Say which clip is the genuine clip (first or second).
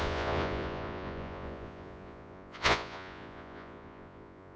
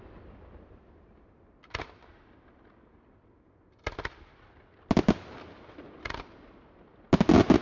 second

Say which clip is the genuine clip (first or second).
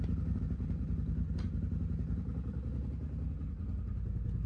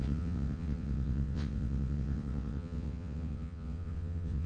first